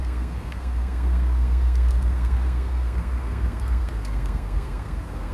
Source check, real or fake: fake